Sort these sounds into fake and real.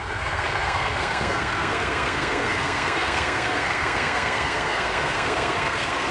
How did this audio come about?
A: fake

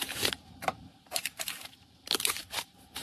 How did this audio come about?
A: fake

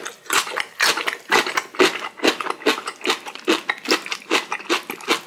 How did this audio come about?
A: real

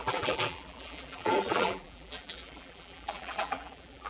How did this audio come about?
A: fake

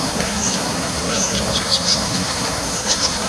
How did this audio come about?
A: fake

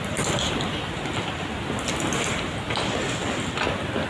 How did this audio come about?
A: real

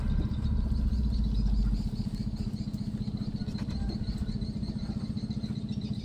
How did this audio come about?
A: real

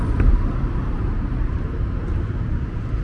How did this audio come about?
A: fake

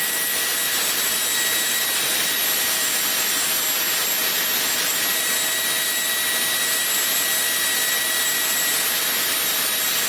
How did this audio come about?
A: real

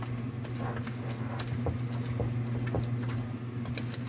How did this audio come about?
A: real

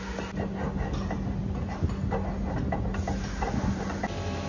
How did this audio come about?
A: real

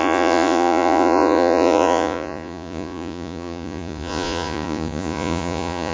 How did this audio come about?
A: fake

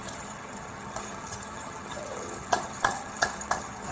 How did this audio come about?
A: fake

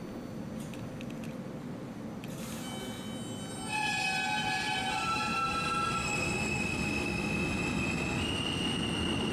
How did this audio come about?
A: real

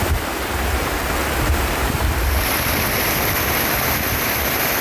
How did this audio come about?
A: fake